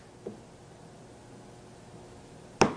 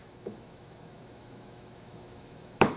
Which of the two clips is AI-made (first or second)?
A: second